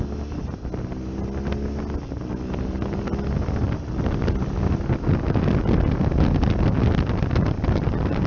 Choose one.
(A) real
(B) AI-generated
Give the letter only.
A